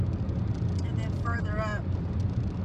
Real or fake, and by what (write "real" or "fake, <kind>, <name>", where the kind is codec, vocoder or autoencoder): real